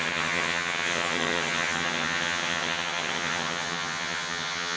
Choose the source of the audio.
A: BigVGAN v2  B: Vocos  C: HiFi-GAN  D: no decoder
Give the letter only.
C